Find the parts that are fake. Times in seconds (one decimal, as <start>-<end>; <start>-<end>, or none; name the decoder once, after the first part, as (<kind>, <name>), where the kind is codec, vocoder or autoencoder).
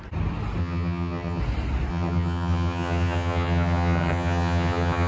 0.6-1.4 (vocoder, HiFi-GAN); 1.9-5.1